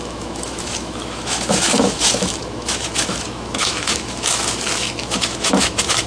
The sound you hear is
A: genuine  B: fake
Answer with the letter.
B